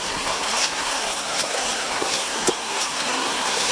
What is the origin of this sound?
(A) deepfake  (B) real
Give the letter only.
A